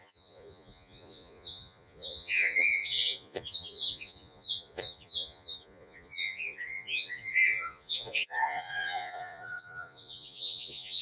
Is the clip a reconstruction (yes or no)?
yes